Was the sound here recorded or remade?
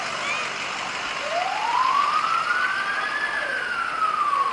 recorded